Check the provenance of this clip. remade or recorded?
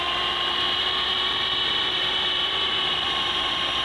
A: remade